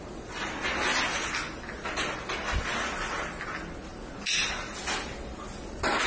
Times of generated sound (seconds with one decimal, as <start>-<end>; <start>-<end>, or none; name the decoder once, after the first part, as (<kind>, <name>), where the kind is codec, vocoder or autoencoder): none